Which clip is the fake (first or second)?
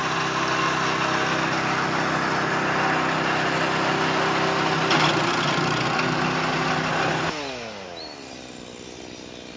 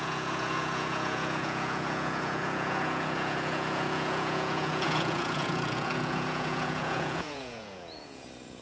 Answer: second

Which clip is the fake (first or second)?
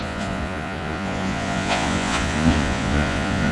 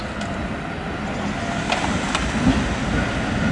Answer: first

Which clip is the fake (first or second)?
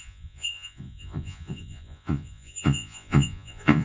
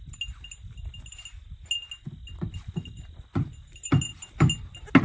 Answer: first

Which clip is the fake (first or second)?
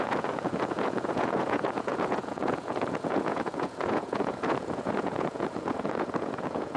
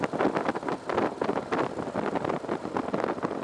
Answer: first